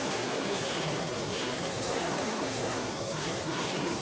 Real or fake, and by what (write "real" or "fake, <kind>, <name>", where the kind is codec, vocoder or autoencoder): fake, codec, SNAC